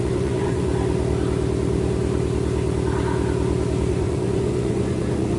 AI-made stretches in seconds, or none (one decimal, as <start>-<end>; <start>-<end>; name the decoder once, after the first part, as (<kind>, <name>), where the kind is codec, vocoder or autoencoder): 0.0-0.7 (vocoder, Vocos); 3.9-5.4